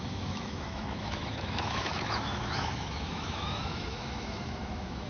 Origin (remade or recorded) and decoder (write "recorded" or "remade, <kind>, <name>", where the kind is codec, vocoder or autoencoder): remade, autoencoder, DAC-VAE